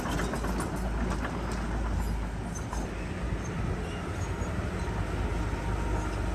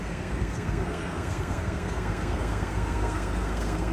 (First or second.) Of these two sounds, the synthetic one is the second